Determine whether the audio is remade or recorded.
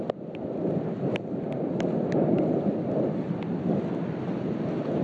recorded